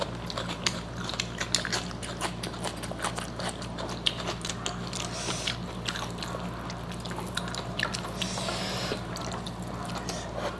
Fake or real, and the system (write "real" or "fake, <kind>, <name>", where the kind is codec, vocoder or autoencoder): real